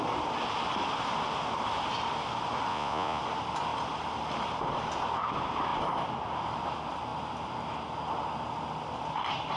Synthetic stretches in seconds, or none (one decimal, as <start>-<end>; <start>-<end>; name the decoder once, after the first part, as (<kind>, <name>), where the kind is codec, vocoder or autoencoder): 2.7-3.2 (vocoder, Vocos)

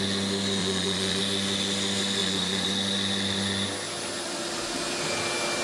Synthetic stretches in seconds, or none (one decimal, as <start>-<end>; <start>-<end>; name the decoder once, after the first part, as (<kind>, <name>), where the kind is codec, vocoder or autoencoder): 0.6-1.2 (vocoder, Vocos); 2.2-2.7

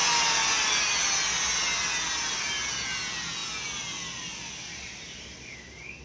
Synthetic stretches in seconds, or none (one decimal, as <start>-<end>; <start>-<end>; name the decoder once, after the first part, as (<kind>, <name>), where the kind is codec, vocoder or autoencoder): none